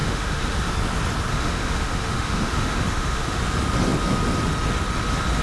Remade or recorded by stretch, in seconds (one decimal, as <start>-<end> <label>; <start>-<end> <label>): 0.0-0.7 remade; 0.7-1.3 recorded; 1.3-3.4 remade; 3.4-5.4 recorded